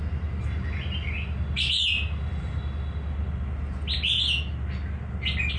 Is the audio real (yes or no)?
yes